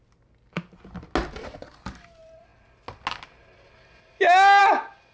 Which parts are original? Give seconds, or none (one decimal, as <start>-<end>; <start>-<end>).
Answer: 0.0-5.1